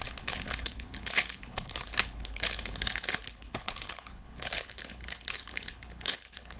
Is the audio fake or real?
fake